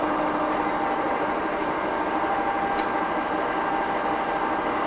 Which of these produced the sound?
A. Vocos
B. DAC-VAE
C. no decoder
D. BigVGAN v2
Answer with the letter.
C